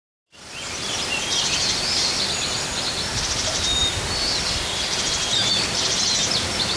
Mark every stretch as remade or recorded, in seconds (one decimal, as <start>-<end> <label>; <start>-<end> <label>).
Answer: 0.0-5.3 recorded; 5.3-6.2 remade; 6.2-6.8 recorded